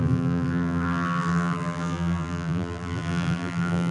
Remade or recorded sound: remade